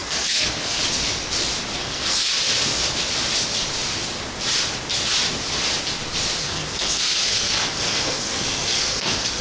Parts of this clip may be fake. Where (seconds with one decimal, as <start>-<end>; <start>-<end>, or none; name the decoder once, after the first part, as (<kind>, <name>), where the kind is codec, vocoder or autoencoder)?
0.0-0.8 (codec, SNAC); 1.8-2.3; 6.4-9.4